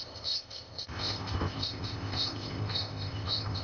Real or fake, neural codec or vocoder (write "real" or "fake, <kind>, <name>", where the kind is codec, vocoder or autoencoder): fake, codec, ZipCodec